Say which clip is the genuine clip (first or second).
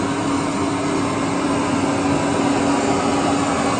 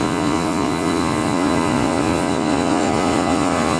first